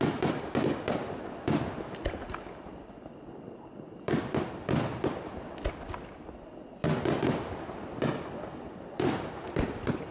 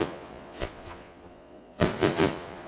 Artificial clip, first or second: second